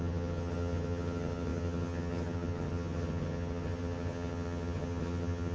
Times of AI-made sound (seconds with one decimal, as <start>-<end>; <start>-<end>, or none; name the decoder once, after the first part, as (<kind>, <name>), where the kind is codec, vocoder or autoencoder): 0.0-5.5 (vocoder, HiFi-GAN)